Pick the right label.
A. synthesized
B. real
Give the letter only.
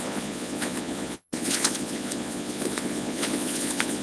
A